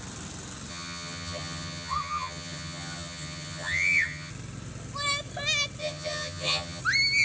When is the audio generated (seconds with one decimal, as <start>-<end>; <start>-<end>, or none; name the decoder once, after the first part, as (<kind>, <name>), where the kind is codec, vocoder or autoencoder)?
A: 0.7-4.3 (vocoder, HiFi-GAN); 5.8-6.8